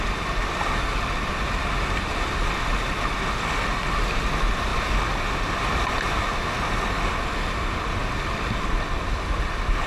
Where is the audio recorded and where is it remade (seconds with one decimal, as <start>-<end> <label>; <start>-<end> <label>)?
0.0-9.9 recorded